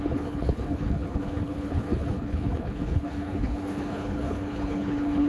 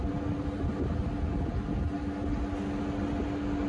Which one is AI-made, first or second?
first